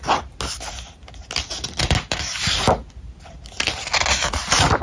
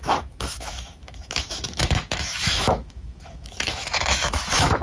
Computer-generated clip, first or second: second